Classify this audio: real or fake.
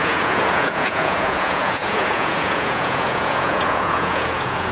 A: fake